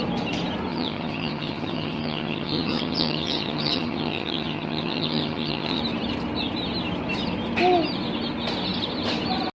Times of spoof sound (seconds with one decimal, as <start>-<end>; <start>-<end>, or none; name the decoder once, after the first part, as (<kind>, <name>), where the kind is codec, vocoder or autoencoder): 0.7-5.8 (vocoder, HiFi-GAN)